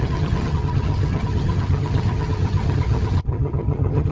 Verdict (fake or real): fake